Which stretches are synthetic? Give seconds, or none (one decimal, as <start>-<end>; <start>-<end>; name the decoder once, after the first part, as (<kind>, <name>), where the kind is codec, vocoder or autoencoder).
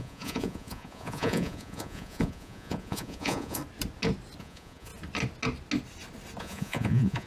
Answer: 0.0-3.6 (vocoder, Vocos); 4.4-4.9; 6.4-7.3